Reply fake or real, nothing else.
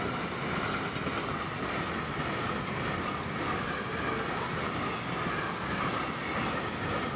real